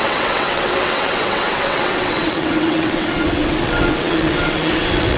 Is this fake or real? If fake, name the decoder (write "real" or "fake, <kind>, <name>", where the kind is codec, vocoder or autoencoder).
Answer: fake, vocoder, WaveNeXt